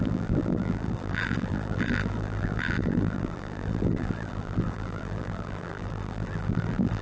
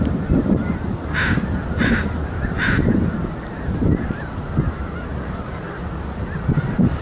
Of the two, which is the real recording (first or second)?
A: second